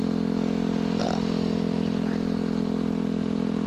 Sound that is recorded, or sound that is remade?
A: recorded